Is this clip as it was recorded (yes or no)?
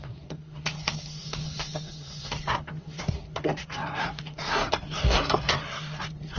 no